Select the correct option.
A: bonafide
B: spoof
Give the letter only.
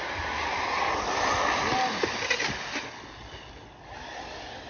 A